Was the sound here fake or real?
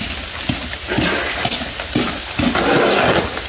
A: real